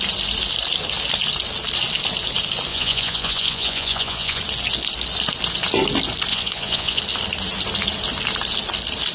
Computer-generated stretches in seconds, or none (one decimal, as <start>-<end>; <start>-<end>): 2.7-4.4; 6.3-7.0